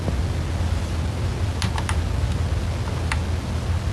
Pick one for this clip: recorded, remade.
recorded